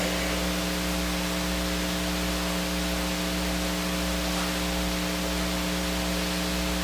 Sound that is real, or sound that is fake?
real